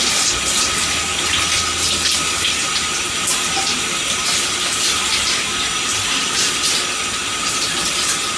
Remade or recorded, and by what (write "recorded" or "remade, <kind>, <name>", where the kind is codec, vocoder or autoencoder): recorded